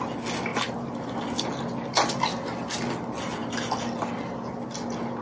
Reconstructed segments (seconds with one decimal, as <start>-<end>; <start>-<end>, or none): none